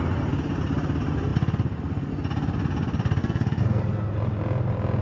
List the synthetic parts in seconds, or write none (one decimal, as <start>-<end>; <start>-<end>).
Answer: 3.2-3.8